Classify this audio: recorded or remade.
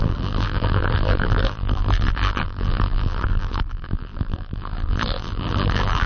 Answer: remade